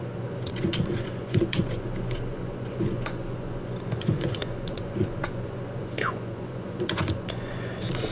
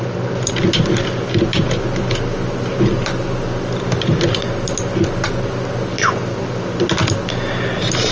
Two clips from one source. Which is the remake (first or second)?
first